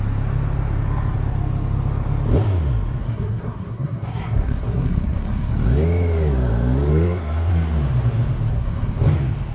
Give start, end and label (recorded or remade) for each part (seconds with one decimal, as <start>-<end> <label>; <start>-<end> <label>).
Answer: 0.0-3.0 recorded; 3.0-5.5 remade; 5.5-6.9 recorded; 6.9-7.5 remade; 7.5-8.5 recorded; 8.5-9.0 remade; 9.0-9.5 recorded